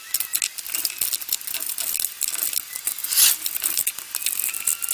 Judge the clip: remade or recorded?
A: recorded